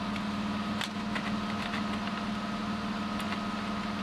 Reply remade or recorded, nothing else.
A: recorded